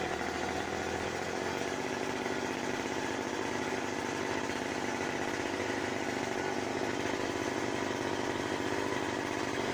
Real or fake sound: real